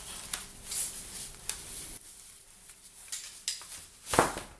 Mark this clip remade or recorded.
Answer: recorded